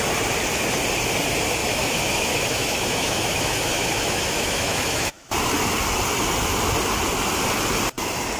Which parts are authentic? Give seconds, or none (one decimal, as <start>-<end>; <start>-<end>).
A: 0.0-1.6; 5.3-8.4